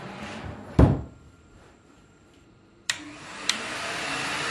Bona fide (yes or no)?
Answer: no